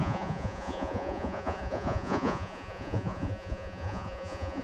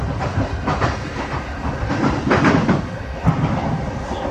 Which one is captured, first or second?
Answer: second